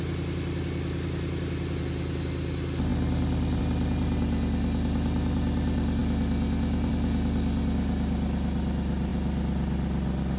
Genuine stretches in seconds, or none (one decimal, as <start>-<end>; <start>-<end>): 0.0-10.4